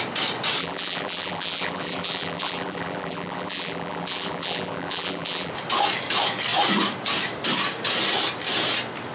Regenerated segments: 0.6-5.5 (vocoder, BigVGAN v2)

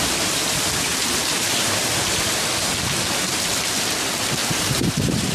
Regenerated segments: 0.9-2.3 (vocoder, BigVGAN v2); 4.4-5.3

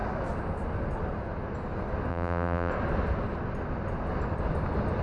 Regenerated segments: 2.1-2.7 (vocoder, BigVGAN v2)

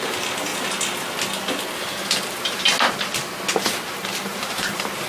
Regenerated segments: 0.0-0.5 (vocoder, BigVGAN v2); 3.6-5.1